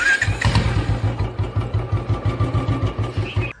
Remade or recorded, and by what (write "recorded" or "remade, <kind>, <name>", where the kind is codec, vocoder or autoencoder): recorded